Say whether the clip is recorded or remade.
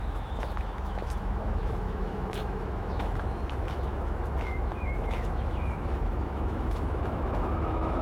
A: remade